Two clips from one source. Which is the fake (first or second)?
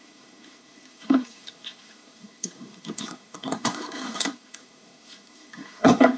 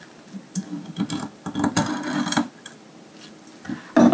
first